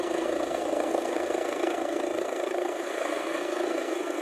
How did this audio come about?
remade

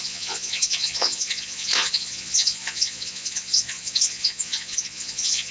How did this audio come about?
remade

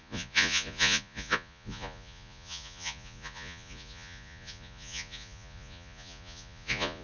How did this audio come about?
remade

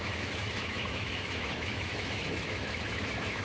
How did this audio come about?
remade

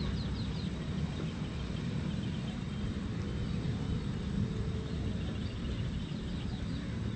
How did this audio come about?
recorded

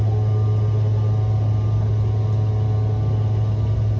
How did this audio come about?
recorded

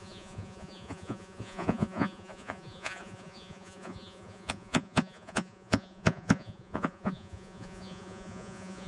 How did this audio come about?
remade